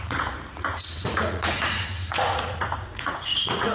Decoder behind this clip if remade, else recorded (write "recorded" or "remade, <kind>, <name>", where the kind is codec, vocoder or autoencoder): remade, vocoder, Vocos